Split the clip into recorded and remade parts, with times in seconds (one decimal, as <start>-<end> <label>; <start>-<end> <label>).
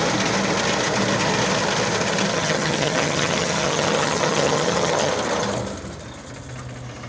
0.0-2.3 recorded; 2.3-5.1 remade; 5.1-7.1 recorded